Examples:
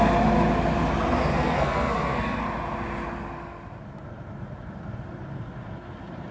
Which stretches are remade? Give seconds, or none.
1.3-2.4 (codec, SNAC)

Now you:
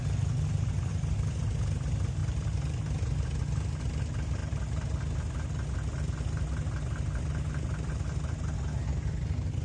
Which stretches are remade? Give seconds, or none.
2.2-3.4 (vocoder, BigVGAN v2)

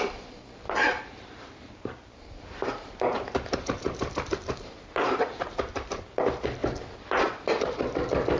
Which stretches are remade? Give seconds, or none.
1.1-5.9 (vocoder, BigVGAN v2); 6.6-7.2